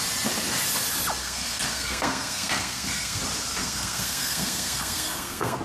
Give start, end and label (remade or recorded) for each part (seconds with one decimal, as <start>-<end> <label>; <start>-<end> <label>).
0.0-1.2 recorded; 1.2-3.2 remade; 3.2-3.6 recorded; 3.6-5.6 remade